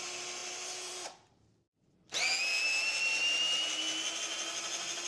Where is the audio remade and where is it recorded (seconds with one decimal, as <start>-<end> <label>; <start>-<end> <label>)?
0.0-5.1 recorded